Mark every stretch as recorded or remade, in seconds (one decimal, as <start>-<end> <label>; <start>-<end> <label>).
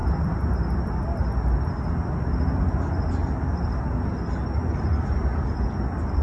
0.0-0.5 remade; 0.5-6.2 recorded